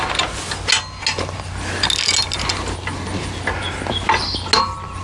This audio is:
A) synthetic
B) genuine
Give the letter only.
B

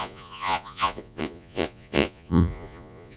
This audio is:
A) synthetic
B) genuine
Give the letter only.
A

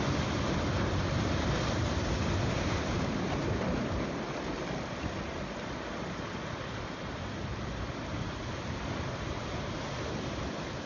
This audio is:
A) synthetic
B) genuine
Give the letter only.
B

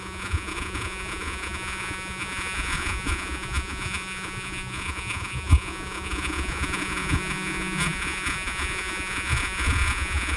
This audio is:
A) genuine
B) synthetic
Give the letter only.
B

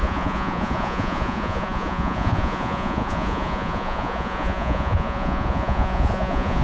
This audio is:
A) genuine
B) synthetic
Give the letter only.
B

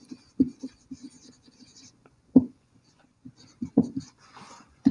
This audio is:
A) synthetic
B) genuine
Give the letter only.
A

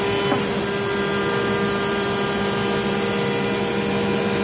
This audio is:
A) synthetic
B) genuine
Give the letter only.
B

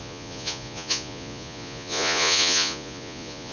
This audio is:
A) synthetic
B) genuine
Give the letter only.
A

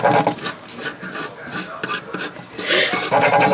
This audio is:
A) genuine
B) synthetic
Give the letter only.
A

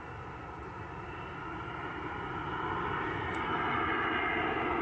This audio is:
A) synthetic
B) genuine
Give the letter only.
B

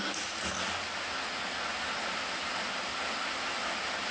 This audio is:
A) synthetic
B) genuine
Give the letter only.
B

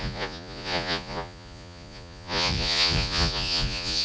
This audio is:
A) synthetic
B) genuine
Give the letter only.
A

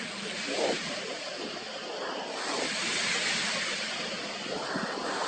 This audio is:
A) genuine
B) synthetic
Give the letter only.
A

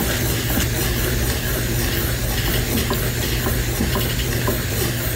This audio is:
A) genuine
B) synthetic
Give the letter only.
A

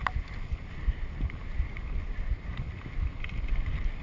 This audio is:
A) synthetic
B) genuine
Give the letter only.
B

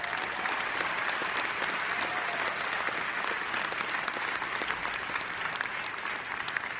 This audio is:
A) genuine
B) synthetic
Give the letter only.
A